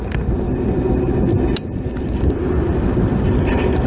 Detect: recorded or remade recorded